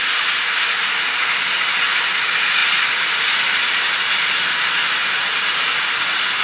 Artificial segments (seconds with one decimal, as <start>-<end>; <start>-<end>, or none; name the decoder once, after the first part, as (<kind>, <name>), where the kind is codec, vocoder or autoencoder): none